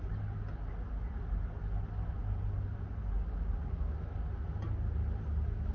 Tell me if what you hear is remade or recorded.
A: recorded